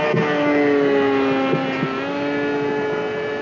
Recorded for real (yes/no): yes